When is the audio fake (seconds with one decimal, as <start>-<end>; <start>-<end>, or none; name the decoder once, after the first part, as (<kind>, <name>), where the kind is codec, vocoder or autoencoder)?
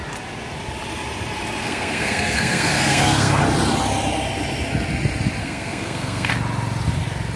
1.6-3.4 (codec, SNAC); 5.4-6.3